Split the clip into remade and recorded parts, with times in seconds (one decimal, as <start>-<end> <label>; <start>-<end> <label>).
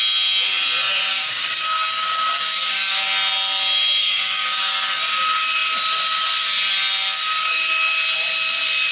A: 0.0-1.1 recorded; 1.1-3.0 remade; 3.0-4.0 recorded; 4.0-5.0 remade; 5.0-8.9 recorded